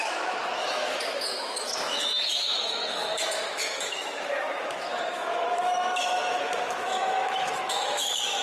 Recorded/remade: remade